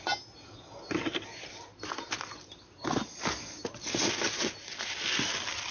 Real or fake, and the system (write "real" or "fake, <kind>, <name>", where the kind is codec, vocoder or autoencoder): real